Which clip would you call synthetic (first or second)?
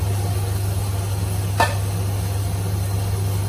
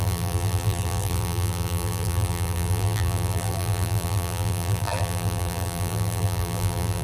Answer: second